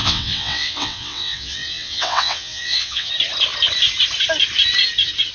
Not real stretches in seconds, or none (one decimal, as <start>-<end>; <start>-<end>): 0.0-3.1